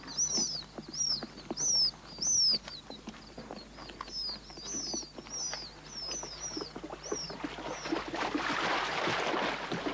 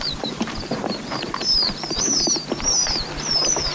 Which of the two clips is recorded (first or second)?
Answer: first